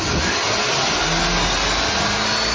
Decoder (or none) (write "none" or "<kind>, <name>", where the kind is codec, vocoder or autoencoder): none